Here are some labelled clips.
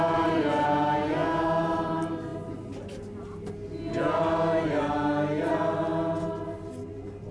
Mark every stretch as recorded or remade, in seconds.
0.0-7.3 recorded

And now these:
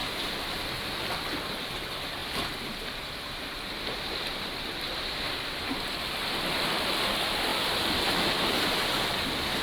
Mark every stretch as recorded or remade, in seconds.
0.0-2.2 recorded; 2.2-6.0 remade; 6.0-7.5 recorded; 7.5-8.3 remade; 8.3-9.6 recorded

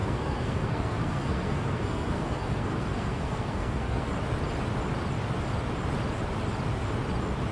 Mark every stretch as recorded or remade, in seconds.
0.0-4.1 remade; 4.1-7.5 recorded

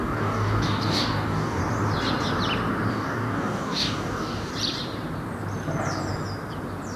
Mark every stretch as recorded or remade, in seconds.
0.0-1.6 remade; 1.6-2.9 recorded; 2.9-4.5 remade; 4.5-7.0 recorded

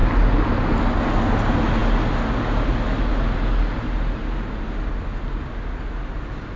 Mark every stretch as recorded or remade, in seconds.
0.0-6.6 recorded

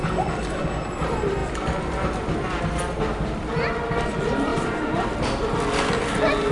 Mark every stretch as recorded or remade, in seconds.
0.0-4.5 recorded; 4.5-5.3 remade; 5.3-6.5 recorded

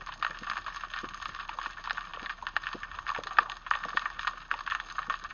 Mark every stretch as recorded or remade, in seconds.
0.0-5.3 recorded